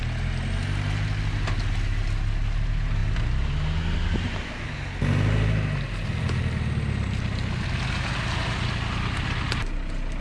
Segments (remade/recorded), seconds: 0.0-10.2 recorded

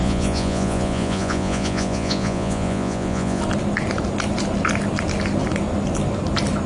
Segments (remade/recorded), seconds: 0.0-3.4 remade; 3.4-6.7 recorded

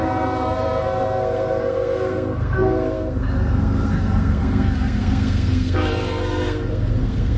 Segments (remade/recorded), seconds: 0.0-7.4 remade

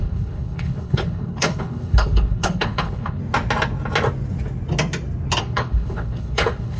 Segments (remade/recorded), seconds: 0.0-3.2 remade; 3.2-5.4 recorded; 5.4-6.8 remade

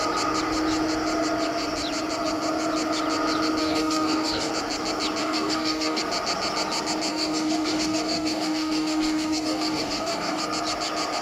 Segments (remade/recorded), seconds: 0.0-3.6 recorded; 3.6-4.5 remade; 4.5-5.2 recorded; 5.2-6.0 remade; 6.0-7.1 recorded; 7.1-10.4 remade; 10.4-11.2 recorded

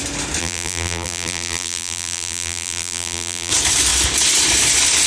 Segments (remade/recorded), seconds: 0.0-0.4 recorded; 0.4-3.5 remade; 3.5-5.1 recorded